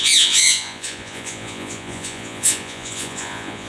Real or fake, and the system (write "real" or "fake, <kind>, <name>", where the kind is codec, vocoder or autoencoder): fake, vocoder, Vocos